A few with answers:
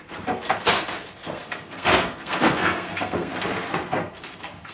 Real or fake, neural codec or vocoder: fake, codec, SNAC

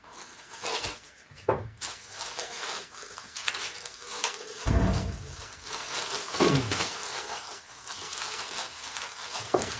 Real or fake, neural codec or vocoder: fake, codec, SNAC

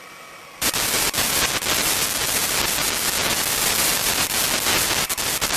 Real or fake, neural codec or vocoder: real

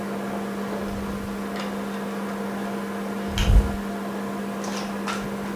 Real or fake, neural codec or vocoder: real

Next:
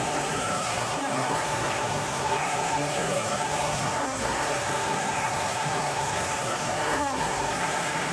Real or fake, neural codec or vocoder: fake, codec, SNAC